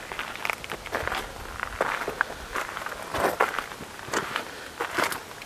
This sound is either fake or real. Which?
real